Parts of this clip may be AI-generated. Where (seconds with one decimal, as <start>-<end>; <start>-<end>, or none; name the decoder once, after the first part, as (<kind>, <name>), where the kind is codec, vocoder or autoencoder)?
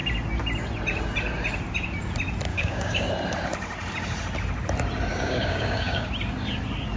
2.5-3.1 (codec, DAC); 5.1-6.1